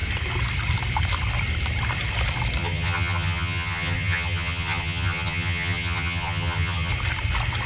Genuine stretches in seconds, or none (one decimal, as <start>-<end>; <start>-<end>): 0.0-2.6; 6.9-7.7